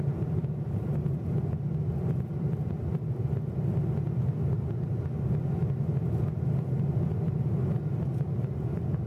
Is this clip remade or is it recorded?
recorded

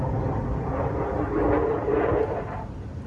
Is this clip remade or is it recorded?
recorded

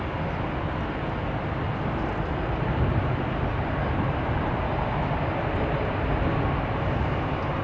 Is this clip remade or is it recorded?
recorded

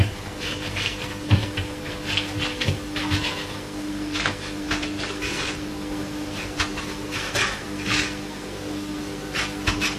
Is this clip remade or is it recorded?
remade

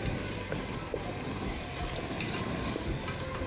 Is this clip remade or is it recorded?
recorded